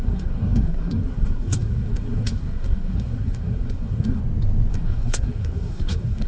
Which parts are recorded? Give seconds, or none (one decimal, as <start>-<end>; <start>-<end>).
4.2-4.7